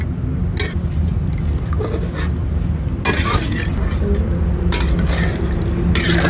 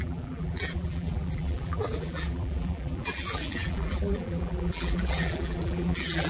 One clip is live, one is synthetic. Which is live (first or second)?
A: first